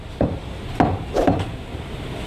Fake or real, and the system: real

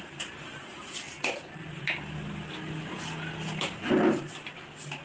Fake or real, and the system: real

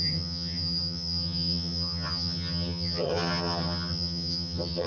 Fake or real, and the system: fake, vocoder, HiFi-GAN